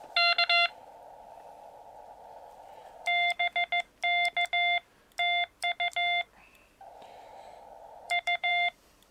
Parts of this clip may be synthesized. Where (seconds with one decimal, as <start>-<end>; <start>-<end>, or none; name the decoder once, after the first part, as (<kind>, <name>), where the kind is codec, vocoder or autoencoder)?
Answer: 2.8-3.4 (vocoder, BigVGAN v2); 7.3-9.1